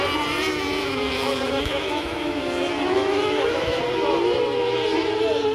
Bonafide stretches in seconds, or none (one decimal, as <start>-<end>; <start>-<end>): 0.0-0.5; 3.8-5.5